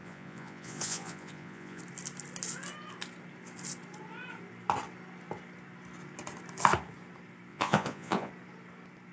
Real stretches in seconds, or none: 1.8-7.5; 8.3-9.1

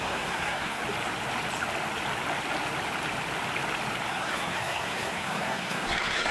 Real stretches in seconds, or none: 0.8-4.1

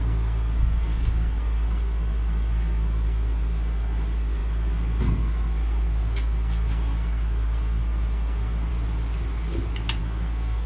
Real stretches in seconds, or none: 8.7-10.0

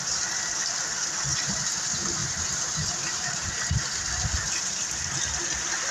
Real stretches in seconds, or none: 0.0-1.3; 1.8-2.2; 3.6-5.9